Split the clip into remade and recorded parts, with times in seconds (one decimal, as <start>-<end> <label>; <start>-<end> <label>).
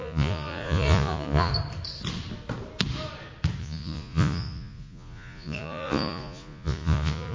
0.0-1.5 remade; 1.5-3.6 recorded; 3.6-7.3 remade